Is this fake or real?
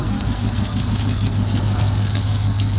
fake